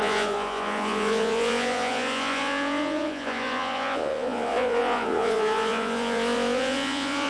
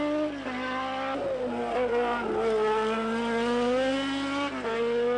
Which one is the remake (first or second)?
first